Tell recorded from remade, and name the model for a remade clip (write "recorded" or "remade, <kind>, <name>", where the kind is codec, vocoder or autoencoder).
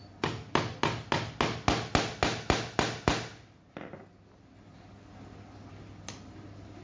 recorded